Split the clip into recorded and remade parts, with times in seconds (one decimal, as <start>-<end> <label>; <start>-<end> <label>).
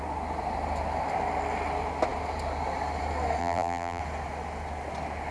0.0-3.4 recorded; 3.4-4.0 remade; 4.0-5.3 recorded